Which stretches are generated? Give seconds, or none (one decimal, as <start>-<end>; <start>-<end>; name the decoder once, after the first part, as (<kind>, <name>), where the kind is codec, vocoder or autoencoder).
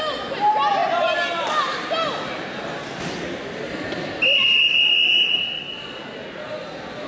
none